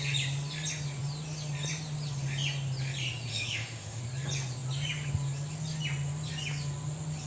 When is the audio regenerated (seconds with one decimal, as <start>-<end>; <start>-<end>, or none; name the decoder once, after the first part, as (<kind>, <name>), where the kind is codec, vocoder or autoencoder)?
3.3-4.0 (autoencoder, DAC-VAE)